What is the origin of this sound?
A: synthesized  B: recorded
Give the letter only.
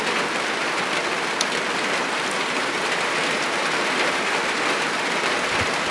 B